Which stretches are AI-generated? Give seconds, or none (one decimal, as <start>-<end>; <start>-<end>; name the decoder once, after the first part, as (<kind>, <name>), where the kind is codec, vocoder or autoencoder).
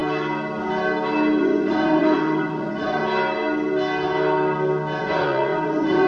1.4-3.0 (vocoder, Vocos); 5.0-6.1